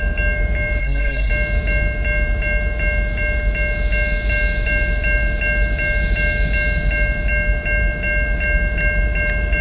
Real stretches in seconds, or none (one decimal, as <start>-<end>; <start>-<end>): 0.0-0.8; 1.3-9.6